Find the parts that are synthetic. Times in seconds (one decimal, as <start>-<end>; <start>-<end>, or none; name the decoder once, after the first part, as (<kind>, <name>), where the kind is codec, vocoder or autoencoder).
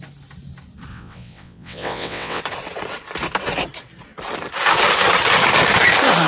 0.9-2.4 (vocoder, WaveNeXt)